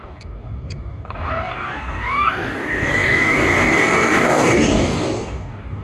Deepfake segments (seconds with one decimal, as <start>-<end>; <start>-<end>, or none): 0.0-5.8